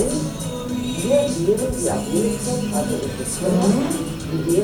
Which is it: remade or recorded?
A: recorded